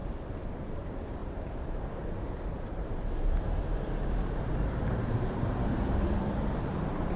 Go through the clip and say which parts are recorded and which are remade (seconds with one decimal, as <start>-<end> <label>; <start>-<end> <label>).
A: 0.0-0.5 recorded; 0.5-7.2 remade